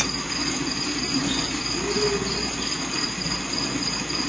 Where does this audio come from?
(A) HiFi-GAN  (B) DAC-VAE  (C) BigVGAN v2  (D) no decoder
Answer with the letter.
D